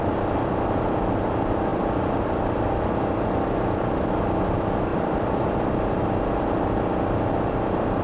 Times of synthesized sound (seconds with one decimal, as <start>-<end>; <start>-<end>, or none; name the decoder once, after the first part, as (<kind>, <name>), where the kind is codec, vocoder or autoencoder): 1.7-2.9 (vocoder, BigVGAN v2); 4.9-5.6